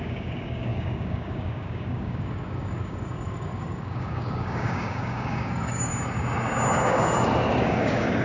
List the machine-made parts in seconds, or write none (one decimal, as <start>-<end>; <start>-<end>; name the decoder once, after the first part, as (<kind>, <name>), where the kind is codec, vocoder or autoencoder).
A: 0.0-5.9 (codec, DAC); 7.6-8.2